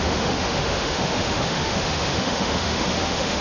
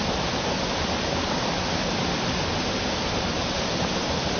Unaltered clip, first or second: second